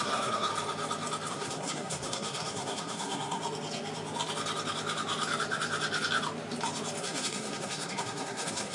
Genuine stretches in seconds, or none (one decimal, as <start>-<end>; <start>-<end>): 0.5-1.3; 3.4-7.0